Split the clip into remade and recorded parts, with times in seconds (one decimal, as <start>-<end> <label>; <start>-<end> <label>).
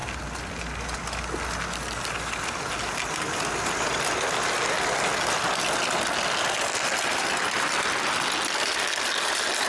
0.0-9.7 recorded